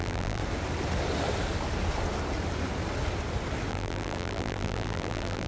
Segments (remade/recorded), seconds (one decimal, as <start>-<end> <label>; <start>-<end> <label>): 0.0-0.4 remade; 0.4-3.7 recorded; 3.7-5.5 remade